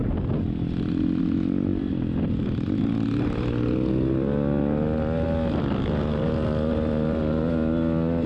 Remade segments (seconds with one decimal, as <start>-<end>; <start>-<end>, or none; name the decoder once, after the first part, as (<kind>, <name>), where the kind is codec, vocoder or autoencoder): none